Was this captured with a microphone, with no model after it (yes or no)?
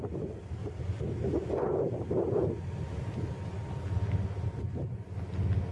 yes